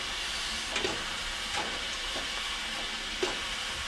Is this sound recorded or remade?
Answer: recorded